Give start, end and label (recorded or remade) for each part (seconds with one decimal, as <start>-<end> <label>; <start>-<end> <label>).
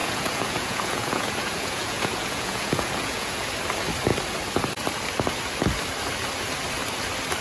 0.0-3.5 remade; 3.5-7.4 recorded